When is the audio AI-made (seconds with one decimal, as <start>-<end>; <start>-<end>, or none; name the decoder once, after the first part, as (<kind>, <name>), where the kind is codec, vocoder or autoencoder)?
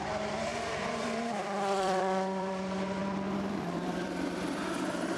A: 0.0-5.2 (vocoder, BigVGAN v2)